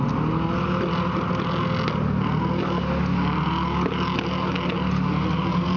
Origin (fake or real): real